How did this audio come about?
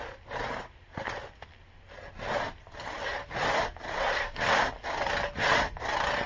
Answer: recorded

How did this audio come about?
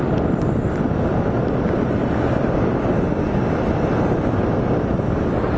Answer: recorded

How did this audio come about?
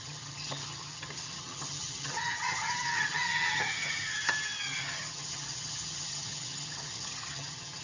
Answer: remade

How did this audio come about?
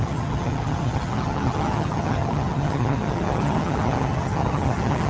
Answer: remade